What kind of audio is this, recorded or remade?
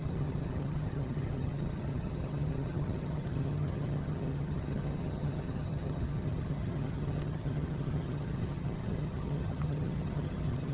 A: remade